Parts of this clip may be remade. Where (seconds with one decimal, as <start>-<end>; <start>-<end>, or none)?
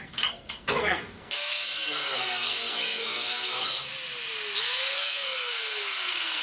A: 0.0-3.9; 4.6-6.4